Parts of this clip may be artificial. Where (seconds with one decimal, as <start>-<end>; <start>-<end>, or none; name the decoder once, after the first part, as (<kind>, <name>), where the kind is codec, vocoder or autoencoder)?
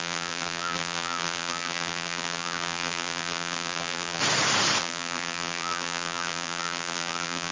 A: 0.0-4.2 (vocoder, BigVGAN v2); 4.8-7.5